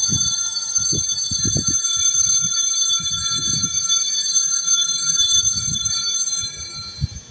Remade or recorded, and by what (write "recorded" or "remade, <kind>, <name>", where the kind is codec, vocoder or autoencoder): recorded